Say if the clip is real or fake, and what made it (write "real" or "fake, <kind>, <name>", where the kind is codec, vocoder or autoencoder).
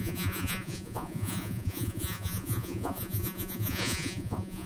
fake, vocoder, Vocos